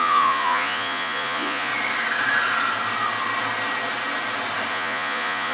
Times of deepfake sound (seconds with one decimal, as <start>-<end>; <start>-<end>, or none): 0.0-1.7; 4.7-5.5

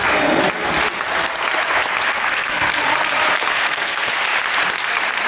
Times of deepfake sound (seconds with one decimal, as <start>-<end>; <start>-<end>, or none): 2.1-2.8; 3.5-4.1

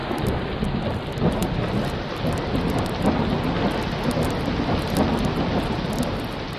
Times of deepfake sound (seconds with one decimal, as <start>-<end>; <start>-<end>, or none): none

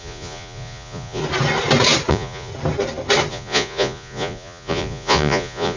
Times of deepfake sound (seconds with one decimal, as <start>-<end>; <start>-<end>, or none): 0.0-1.2; 2.1-2.5; 3.3-5.8

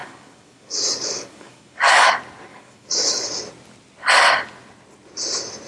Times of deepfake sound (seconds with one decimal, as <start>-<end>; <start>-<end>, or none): 0.0-2.1; 2.5-3.3